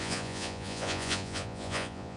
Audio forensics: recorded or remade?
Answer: remade